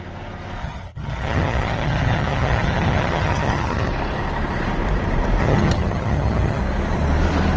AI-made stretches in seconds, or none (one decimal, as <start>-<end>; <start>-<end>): 0.6-3.9; 5.4-6.6